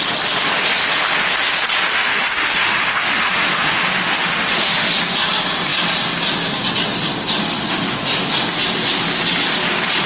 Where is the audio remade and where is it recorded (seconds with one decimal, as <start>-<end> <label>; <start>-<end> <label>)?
0.0-1.9 recorded; 1.9-5.0 remade; 5.0-7.4 recorded; 7.4-8.3 remade; 8.3-10.1 recorded